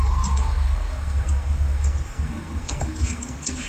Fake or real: fake